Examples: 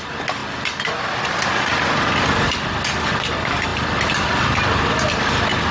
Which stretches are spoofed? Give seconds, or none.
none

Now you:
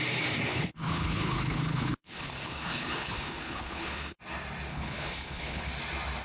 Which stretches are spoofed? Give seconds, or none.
0.5-4.2 (codec, HILCodec); 4.7-5.7